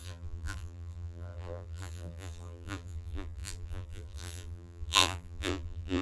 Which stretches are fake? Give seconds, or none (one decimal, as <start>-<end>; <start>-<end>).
0.0-6.0